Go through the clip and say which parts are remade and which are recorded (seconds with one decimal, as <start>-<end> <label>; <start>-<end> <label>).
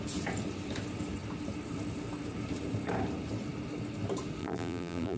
0.0-4.4 recorded; 4.4-5.2 remade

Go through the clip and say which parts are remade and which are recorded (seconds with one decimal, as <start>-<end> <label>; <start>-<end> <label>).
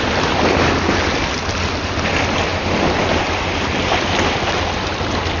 0.0-2.5 recorded; 2.5-3.7 remade; 3.7-5.4 recorded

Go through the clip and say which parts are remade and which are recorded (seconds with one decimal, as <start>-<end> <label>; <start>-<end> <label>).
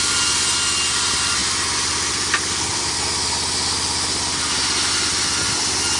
0.0-6.0 recorded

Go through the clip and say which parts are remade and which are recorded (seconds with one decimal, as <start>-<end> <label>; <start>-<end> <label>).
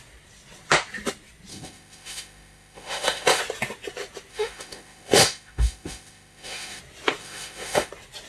0.0-1.5 recorded; 1.5-3.4 remade; 3.4-4.3 recorded; 4.3-6.8 remade; 6.8-7.2 recorded; 7.2-7.9 remade; 7.9-8.3 recorded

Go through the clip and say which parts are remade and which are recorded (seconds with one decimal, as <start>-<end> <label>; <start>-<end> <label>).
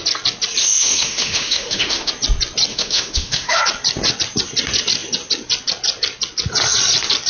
0.0-0.6 recorded; 0.6-2.1 remade; 2.1-2.7 recorded; 2.7-3.6 remade; 3.6-7.3 recorded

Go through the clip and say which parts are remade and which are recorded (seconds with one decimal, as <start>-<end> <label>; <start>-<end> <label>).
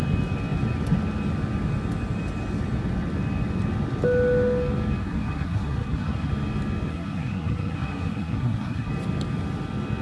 0.0-5.0 recorded; 5.0-6.3 remade; 6.3-6.9 recorded; 6.9-8.9 remade; 8.9-10.0 recorded